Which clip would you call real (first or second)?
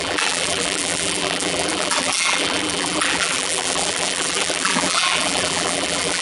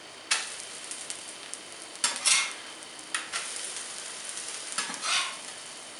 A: second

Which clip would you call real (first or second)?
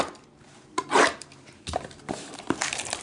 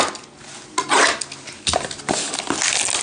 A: second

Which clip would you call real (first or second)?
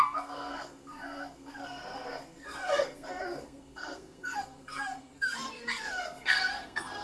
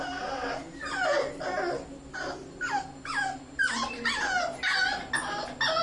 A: second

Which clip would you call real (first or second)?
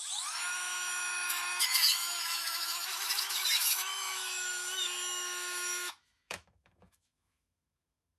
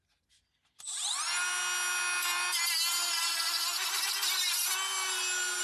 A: second